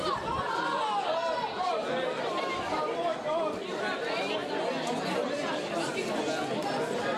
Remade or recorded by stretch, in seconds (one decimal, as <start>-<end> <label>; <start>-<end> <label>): 0.0-7.2 recorded